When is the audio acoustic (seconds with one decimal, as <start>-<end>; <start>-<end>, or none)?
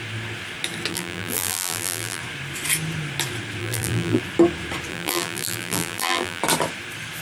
0.0-0.9; 2.2-3.6; 4.2-4.9; 6.4-7.2